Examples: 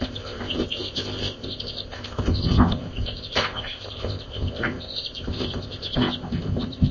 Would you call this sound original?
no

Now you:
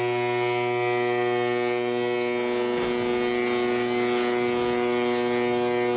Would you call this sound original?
yes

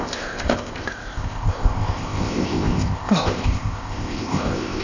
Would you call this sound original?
no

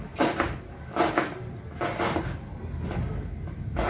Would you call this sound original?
yes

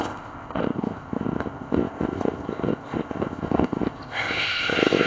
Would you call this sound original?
no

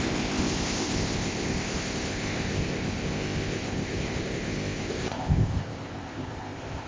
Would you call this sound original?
no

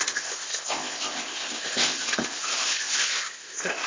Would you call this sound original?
no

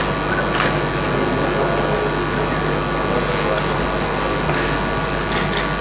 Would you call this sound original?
yes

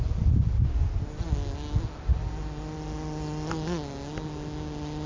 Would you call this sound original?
yes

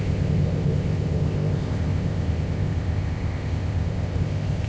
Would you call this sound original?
no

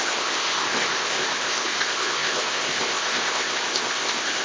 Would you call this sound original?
no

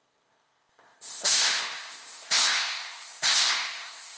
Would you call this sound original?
no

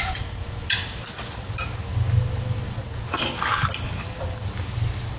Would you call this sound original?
yes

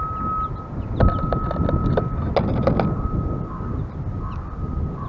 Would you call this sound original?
yes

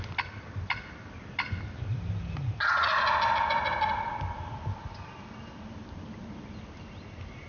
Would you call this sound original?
yes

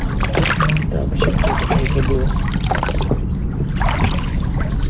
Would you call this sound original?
yes